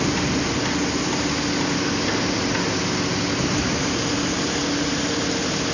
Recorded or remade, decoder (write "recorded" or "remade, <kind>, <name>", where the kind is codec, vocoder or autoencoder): recorded